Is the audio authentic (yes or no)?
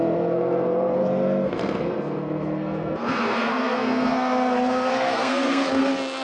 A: no